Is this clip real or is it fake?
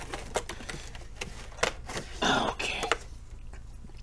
real